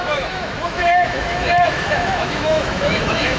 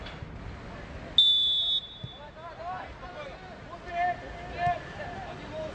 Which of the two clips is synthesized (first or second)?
first